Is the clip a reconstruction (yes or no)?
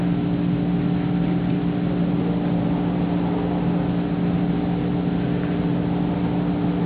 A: no